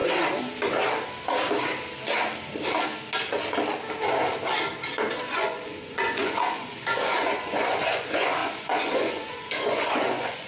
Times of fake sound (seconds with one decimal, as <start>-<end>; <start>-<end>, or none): 5.3-10.5